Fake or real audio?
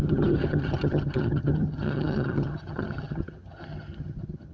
fake